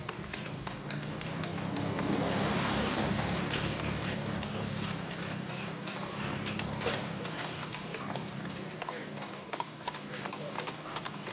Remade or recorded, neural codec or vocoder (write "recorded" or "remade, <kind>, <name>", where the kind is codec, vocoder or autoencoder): remade, codec, DAC